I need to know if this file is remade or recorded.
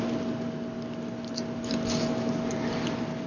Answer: recorded